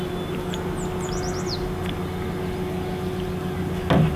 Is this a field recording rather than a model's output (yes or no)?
yes